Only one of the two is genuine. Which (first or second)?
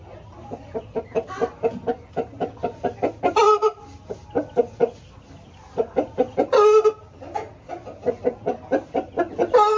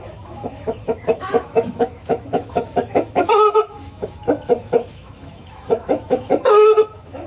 first